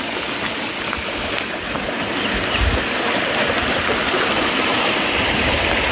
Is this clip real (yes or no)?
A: yes